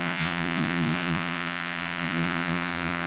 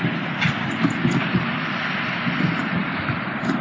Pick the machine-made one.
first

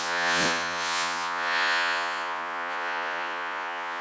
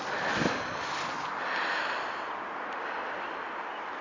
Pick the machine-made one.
first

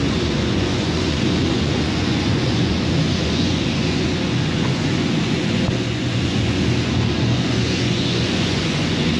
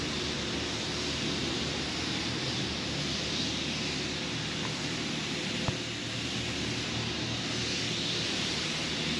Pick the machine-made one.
first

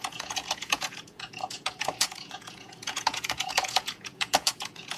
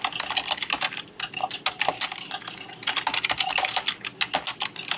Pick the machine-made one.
first